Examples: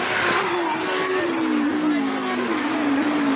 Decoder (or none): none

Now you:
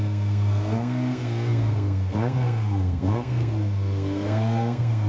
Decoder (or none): codec, SNAC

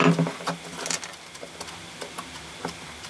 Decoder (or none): none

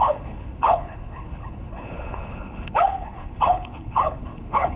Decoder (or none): codec, HILCodec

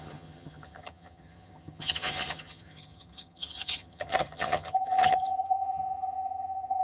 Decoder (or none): vocoder, HiFi-GAN